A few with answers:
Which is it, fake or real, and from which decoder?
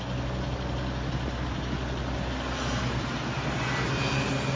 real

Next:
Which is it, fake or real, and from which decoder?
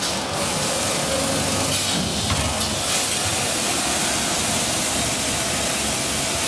real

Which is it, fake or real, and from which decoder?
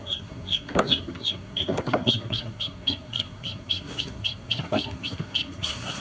fake, codec, SNAC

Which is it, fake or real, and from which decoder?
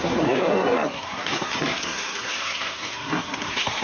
fake, codec, SNAC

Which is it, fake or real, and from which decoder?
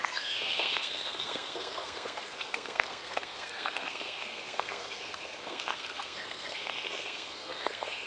fake, codec, SNAC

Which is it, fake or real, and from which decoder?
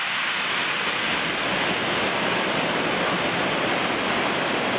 real